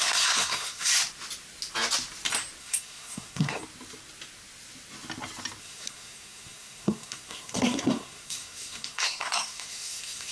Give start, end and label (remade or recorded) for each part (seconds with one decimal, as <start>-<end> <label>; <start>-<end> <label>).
0.0-0.9 remade; 0.9-2.6 recorded; 2.6-3.6 remade; 3.6-5.6 recorded; 5.6-10.3 remade